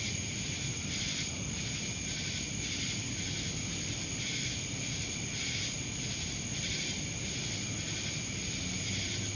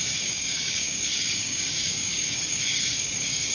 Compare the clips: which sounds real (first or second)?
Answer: first